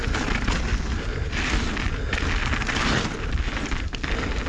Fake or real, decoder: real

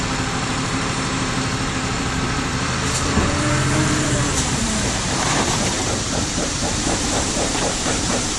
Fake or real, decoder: fake, vocoder, BigVGAN v2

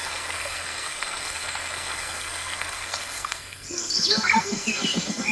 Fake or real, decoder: fake, codec, SNAC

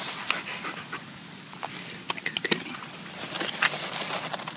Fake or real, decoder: real